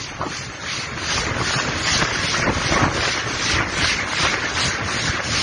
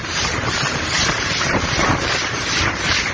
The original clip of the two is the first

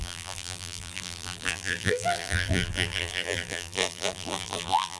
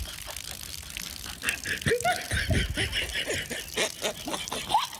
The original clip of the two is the second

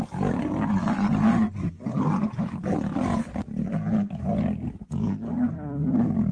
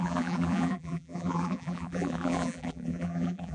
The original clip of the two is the first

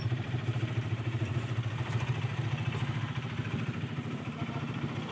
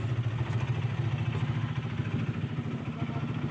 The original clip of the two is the second